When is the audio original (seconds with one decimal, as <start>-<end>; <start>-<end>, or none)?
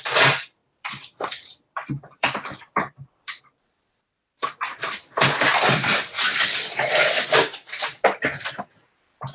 7.5-8.6